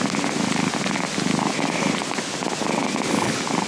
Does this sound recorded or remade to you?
recorded